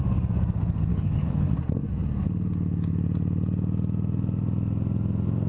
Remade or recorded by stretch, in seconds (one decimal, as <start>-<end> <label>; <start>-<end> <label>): 0.0-0.9 recorded; 0.9-1.5 remade; 1.5-5.5 recorded